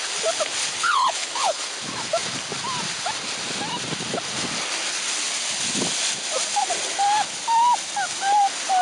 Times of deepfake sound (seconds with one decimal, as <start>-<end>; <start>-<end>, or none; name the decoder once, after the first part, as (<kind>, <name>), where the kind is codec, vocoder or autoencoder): 0.6-1.7 (codec, HILCodec)